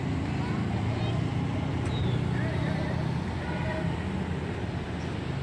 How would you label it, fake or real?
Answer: real